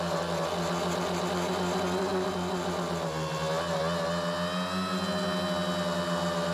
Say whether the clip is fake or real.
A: real